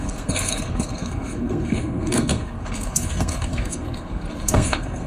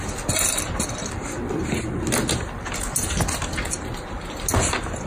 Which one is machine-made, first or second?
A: first